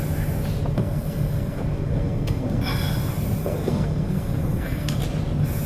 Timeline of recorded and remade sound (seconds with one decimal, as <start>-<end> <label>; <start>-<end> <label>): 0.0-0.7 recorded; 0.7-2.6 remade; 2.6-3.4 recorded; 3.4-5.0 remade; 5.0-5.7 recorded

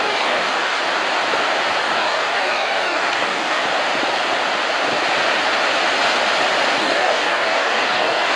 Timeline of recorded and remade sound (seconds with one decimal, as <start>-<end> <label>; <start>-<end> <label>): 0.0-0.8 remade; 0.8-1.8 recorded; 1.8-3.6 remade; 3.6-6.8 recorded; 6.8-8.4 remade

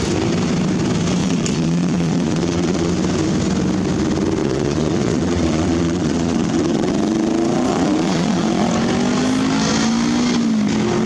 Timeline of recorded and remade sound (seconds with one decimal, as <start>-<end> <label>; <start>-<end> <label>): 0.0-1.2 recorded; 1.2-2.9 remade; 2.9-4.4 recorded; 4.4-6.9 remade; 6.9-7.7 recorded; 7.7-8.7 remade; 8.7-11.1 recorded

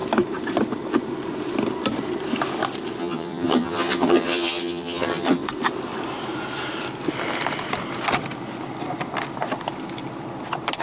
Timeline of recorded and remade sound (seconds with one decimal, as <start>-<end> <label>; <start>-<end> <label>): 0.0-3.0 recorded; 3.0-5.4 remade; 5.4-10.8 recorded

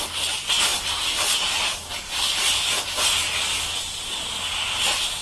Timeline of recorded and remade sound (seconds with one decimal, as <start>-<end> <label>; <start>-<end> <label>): 0.0-5.2 recorded